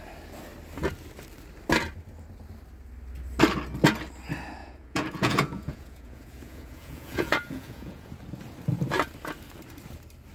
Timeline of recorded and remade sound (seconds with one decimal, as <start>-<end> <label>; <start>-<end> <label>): 0.0-4.6 recorded; 4.6-8.1 remade; 8.1-10.3 recorded